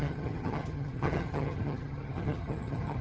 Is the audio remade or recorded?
remade